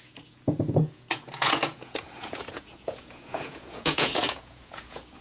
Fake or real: fake